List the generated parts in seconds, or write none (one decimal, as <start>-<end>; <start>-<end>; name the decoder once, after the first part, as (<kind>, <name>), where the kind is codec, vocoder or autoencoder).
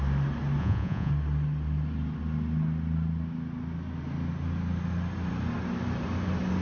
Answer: 0.6-1.1 (vocoder, Vocos)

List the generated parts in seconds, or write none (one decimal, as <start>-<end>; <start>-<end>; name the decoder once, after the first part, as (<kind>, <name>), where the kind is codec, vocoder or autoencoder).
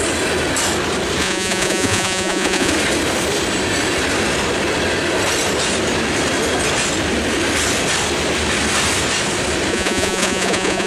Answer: 1.2-2.7 (vocoder, Vocos); 9.7-10.9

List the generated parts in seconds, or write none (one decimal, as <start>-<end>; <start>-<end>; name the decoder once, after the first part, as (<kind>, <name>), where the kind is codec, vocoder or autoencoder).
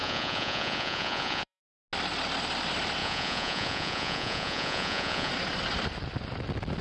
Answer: 0.0-1.6 (vocoder, Vocos); 3.0-5.3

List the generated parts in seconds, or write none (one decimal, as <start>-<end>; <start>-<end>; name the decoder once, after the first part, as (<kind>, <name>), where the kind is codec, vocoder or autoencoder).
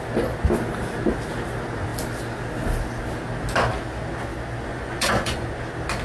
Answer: 4.7-5.5 (vocoder, Vocos)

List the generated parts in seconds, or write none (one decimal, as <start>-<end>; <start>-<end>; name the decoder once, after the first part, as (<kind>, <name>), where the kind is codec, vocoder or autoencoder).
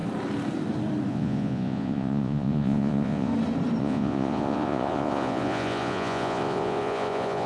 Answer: 1.1-3.3 (vocoder, Vocos); 3.8-7.5